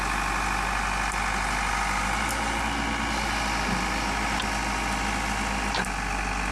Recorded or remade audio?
recorded